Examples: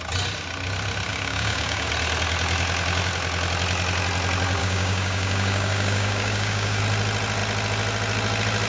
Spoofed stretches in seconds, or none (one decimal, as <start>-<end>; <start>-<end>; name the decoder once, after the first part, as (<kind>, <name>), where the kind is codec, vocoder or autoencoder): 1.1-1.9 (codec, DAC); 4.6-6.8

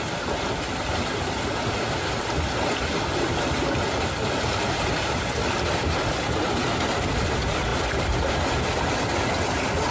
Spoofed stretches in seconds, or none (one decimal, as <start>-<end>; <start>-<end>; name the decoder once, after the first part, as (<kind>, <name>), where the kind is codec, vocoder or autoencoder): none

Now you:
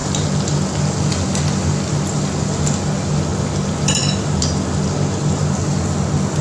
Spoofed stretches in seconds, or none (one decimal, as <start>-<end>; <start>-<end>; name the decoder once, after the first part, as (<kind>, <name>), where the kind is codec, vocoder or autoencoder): none